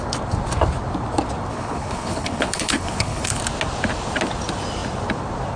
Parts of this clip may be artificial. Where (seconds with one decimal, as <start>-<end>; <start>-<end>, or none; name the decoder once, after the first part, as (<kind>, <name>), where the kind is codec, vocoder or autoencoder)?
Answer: 1.5-3.4 (codec, HILCodec)